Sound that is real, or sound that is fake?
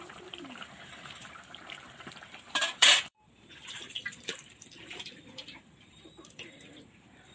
fake